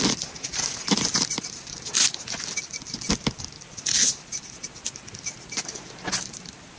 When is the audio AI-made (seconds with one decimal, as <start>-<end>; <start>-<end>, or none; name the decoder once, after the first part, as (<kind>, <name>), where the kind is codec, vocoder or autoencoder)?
none